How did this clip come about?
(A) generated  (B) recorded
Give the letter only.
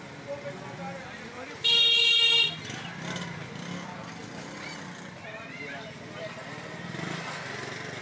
B